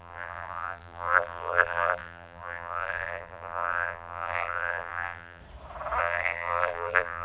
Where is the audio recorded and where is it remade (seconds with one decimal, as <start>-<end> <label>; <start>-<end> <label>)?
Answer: 0.0-5.4 remade; 5.4-6.0 recorded; 6.0-7.2 remade